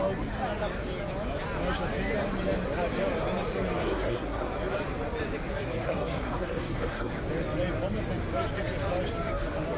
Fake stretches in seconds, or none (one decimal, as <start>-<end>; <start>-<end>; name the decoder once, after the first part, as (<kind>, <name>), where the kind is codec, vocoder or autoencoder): 3.8-4.5 (codec, SNAC); 5.5-7.1